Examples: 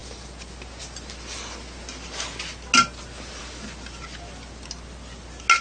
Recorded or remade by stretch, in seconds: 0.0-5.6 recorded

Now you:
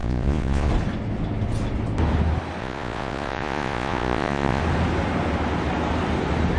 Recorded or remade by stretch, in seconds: 0.0-0.7 remade; 0.7-2.6 recorded; 2.6-4.6 remade; 4.6-6.6 recorded

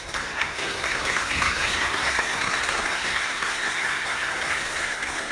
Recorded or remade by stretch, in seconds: 0.0-5.3 remade

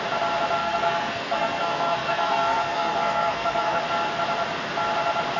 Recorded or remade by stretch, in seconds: 0.0-0.6 recorded; 0.6-3.8 remade; 3.8-5.4 recorded

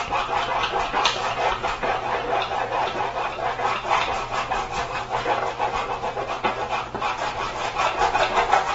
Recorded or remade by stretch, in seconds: 0.0-0.5 recorded; 0.5-3.4 remade; 3.4-8.7 recorded

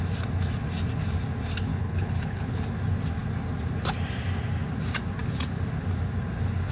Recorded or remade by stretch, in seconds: 0.0-1.7 recorded; 1.7-2.6 remade; 2.6-6.7 recorded